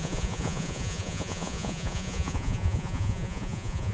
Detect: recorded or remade remade